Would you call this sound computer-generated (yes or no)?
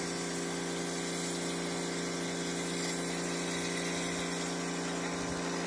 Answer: no